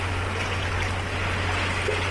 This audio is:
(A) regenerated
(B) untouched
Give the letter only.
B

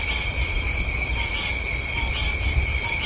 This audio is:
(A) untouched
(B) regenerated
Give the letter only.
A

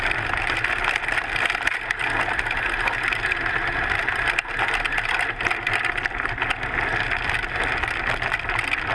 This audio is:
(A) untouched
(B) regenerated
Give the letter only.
A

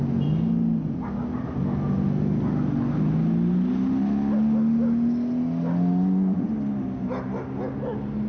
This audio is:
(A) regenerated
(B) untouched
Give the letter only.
B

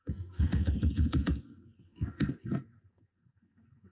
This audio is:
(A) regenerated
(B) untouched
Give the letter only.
A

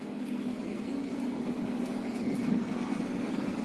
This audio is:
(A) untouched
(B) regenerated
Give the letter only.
B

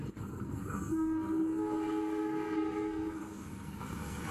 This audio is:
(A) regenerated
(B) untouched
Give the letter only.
A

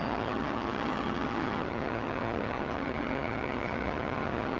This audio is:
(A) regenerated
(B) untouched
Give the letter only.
A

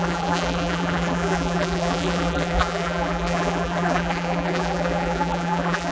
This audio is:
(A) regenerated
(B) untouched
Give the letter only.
A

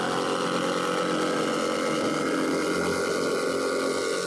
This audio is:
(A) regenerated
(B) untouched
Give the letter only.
B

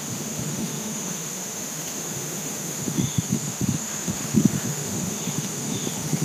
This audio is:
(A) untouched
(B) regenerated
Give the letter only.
B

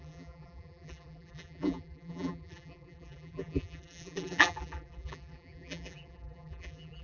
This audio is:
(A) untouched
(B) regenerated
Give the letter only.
B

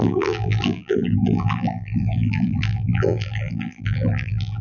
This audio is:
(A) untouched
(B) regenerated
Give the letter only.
B